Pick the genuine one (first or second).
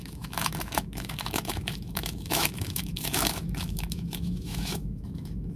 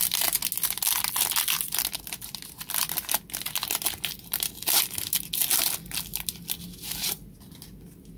second